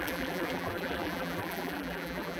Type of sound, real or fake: fake